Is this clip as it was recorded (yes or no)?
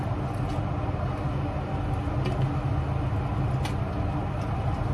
yes